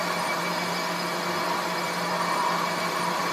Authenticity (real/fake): real